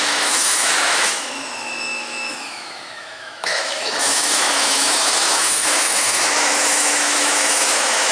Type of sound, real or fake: fake